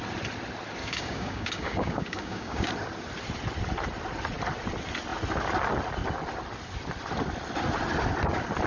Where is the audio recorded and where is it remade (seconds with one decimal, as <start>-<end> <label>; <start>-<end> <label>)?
0.0-0.8 recorded; 0.8-2.7 remade; 2.7-8.7 recorded